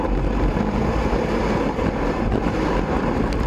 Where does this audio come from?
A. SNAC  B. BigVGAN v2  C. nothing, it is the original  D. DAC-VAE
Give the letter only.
B